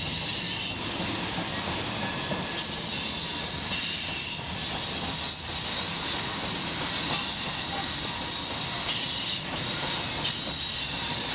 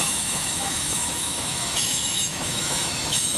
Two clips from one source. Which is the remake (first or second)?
second